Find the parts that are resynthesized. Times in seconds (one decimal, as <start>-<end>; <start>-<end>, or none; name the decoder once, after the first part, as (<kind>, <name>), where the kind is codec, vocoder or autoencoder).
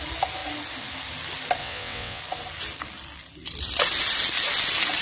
1.6-2.2 (vocoder, WaveNeXt)